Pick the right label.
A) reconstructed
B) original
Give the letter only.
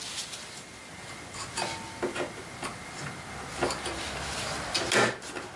B